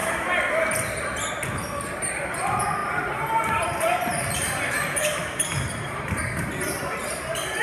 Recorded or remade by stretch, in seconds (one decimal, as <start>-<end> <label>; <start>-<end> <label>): 0.0-7.6 remade